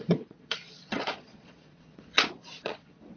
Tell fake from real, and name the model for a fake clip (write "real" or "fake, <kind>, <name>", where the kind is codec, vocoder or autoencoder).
fake, vocoder, Vocos